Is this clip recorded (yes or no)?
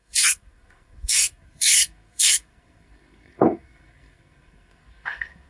no